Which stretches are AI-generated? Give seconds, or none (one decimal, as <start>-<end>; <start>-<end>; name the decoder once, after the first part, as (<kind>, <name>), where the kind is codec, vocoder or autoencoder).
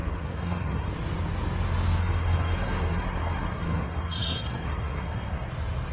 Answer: 0.0-0.9 (codec, SNAC); 2.0-5.5